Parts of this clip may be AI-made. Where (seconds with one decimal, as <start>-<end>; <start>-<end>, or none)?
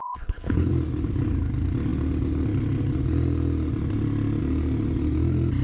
0.0-0.7